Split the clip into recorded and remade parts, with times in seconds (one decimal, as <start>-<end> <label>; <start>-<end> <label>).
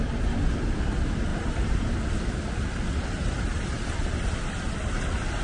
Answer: 0.0-5.4 recorded